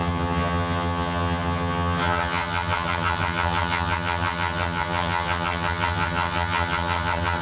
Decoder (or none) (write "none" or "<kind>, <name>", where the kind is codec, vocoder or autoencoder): vocoder, HiFi-GAN